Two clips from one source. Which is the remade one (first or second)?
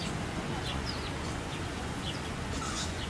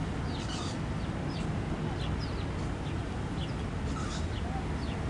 first